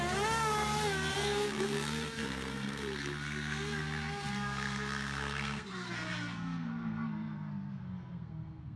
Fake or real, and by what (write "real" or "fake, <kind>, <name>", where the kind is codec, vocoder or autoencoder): fake, codec, SNAC